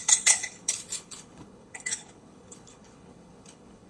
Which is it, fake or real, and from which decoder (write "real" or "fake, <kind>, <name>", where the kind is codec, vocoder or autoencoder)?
fake, codec, HILCodec